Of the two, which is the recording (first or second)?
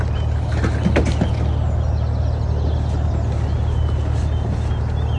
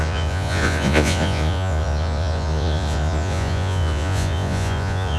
first